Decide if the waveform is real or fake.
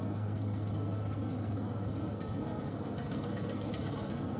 fake